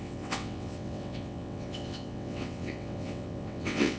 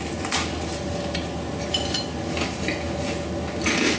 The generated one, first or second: first